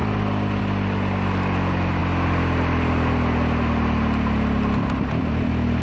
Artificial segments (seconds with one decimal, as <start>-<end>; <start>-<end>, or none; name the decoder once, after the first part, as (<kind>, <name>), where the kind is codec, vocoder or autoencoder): none